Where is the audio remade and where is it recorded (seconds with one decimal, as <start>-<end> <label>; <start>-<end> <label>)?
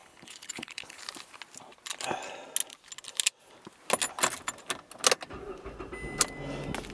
0.0-1.0 remade; 1.0-6.9 recorded